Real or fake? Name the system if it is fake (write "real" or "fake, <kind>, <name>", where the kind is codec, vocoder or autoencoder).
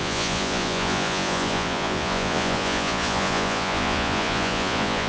fake, vocoder, Vocos